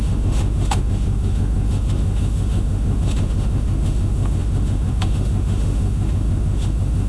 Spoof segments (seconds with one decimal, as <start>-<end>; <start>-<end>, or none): 0.0-7.1